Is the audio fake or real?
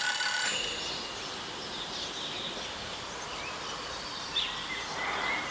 fake